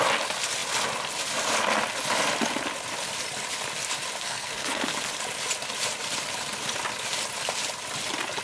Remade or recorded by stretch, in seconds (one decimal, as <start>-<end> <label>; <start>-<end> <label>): 0.0-4.2 recorded; 4.2-5.1 remade; 5.1-8.4 recorded